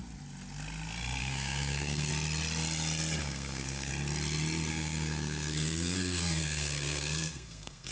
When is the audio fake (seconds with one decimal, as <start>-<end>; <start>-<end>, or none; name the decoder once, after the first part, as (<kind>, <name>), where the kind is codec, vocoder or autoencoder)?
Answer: 1.2-2.1 (codec, SNAC); 3.2-3.9; 4.7-7.9